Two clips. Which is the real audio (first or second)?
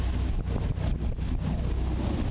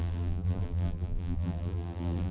first